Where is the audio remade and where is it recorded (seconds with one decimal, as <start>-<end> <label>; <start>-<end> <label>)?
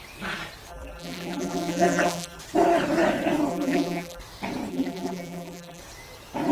0.0-0.7 recorded; 0.7-2.4 remade; 2.4-3.5 recorded; 3.5-4.2 remade; 4.2-4.7 recorded; 4.7-5.8 remade; 5.8-6.5 recorded